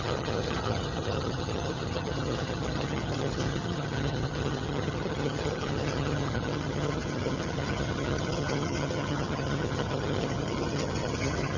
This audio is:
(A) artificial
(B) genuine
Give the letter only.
A